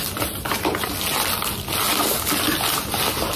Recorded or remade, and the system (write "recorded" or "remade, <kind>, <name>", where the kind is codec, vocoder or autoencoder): recorded